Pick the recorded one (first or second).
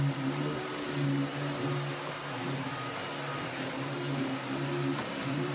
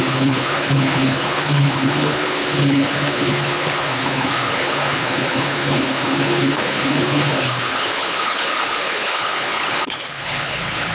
first